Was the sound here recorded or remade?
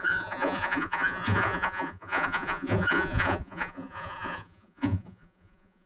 remade